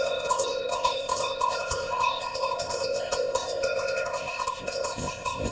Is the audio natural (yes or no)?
no